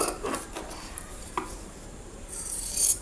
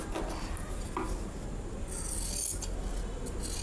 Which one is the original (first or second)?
second